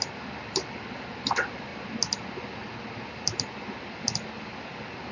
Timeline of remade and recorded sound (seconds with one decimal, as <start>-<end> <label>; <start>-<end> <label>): 0.0-5.1 recorded